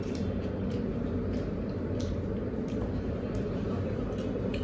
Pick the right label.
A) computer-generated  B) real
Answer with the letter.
A